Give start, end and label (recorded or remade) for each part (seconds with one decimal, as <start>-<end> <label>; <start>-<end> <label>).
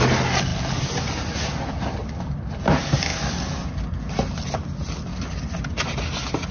0.0-6.5 recorded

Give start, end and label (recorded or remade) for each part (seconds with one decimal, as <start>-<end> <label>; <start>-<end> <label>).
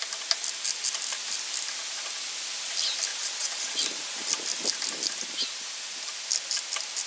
0.0-3.1 recorded; 3.1-3.7 remade; 3.7-7.1 recorded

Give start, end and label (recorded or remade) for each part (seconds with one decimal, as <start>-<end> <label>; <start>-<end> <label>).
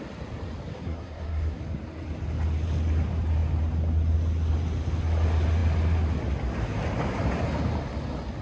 0.0-0.7 recorded; 0.7-1.6 remade; 1.6-8.4 recorded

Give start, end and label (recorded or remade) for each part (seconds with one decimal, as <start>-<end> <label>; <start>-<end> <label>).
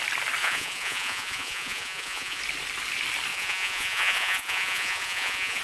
0.0-0.4 recorded; 0.4-2.4 remade; 2.4-3.3 recorded; 3.3-5.6 remade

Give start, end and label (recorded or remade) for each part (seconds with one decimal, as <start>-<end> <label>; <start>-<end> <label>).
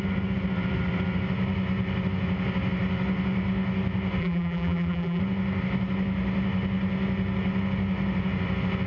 0.0-4.2 recorded; 4.2-5.2 remade; 5.2-8.9 recorded